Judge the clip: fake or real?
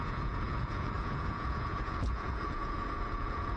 fake